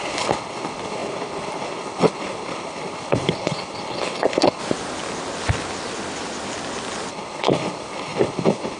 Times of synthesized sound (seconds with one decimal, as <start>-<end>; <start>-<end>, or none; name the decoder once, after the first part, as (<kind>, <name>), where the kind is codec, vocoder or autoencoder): 0.0-4.6 (codec, HILCodec); 7.1-8.8